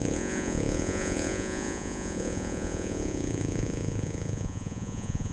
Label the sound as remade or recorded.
remade